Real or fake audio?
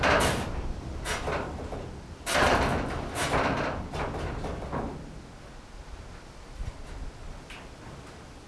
real